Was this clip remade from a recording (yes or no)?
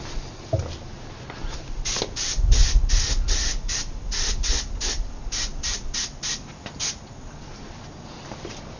no